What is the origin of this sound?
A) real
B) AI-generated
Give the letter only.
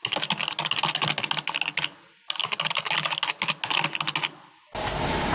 A